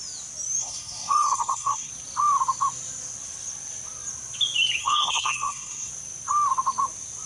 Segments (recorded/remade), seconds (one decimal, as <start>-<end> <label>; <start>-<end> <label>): 0.0-0.6 recorded; 0.6-1.9 remade; 1.9-4.8 recorded; 4.8-5.9 remade; 5.9-7.3 recorded